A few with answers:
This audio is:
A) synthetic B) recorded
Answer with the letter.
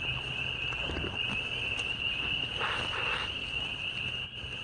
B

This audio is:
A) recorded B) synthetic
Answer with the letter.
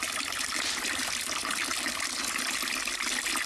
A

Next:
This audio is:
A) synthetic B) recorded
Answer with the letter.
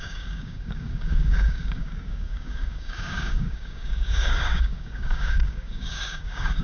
A